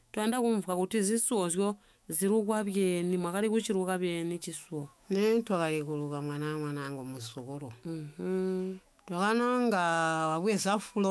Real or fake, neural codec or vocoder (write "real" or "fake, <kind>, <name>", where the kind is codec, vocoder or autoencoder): fake, autoencoder, DAC-VAE